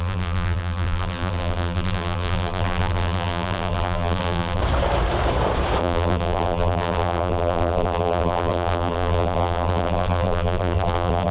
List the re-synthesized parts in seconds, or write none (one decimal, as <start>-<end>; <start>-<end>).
0.0-4.6; 5.8-11.3